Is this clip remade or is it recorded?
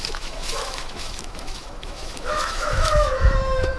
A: remade